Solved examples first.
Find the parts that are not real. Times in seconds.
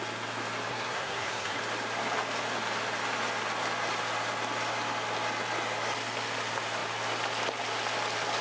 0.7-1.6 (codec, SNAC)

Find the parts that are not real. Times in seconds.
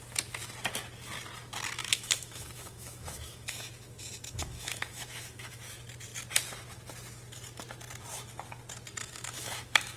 1.8-5.6 (autoencoder, DAC-VAE); 9.0-10.0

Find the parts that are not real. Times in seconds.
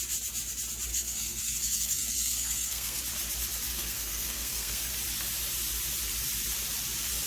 0.9-3.0 (codec, SNAC); 3.7-4.9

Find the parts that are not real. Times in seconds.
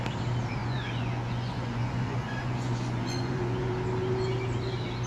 0.6-3.7 (vocoder, Vocos)